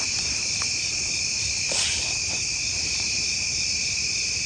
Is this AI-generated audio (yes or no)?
yes